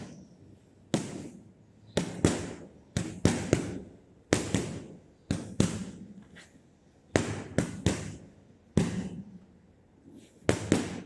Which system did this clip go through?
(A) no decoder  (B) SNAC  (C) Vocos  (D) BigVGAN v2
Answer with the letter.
A